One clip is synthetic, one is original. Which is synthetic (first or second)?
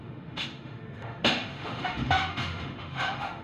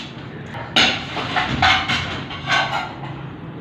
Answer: first